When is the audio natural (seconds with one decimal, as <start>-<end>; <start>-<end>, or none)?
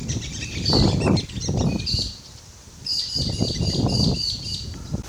none